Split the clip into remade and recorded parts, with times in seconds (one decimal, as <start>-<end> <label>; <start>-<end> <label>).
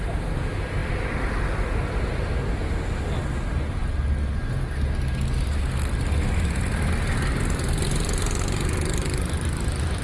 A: 0.0-10.0 recorded